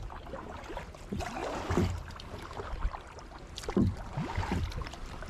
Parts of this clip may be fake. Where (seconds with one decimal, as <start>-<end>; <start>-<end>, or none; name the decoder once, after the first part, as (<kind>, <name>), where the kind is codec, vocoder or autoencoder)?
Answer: none